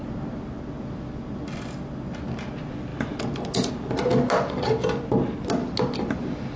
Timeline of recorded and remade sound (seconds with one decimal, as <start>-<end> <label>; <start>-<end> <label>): 0.0-6.6 recorded